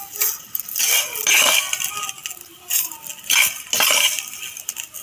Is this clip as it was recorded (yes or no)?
yes